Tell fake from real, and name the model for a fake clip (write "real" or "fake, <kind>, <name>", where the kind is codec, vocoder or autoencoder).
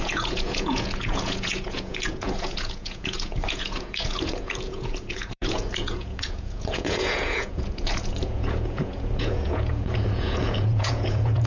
fake, vocoder, Vocos